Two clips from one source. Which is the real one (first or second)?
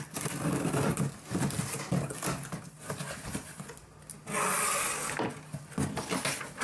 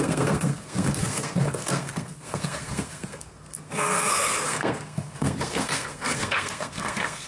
first